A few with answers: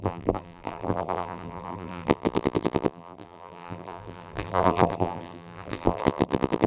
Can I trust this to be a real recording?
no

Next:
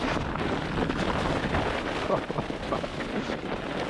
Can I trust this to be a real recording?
yes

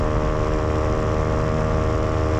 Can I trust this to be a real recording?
yes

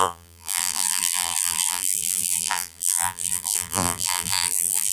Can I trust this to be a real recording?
no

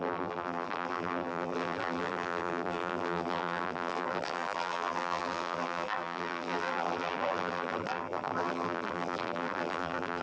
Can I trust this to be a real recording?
no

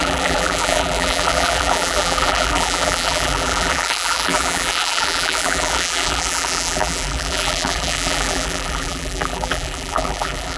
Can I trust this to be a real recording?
no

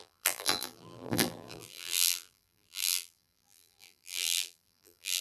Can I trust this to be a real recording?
no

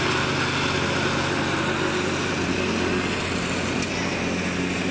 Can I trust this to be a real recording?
yes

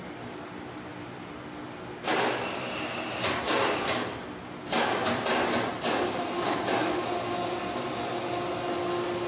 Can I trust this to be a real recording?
yes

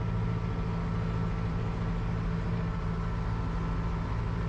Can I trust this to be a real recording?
yes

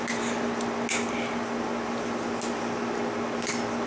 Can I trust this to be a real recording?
yes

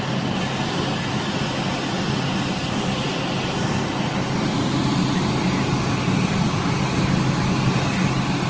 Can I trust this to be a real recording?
yes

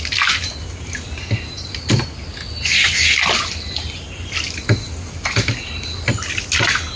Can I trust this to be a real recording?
yes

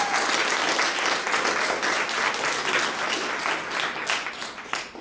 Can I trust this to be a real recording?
yes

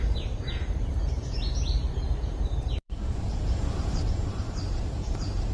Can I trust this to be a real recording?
no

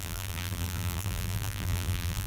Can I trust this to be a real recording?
no